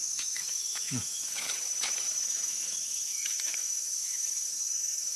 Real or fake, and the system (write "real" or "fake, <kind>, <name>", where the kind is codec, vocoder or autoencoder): fake, autoencoder, DAC-VAE